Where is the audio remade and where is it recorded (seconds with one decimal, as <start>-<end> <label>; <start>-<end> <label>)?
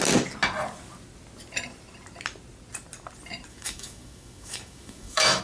0.0-3.5 recorded; 3.5-5.4 remade